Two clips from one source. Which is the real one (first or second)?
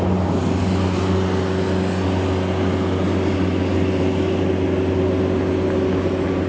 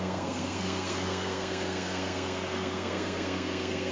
first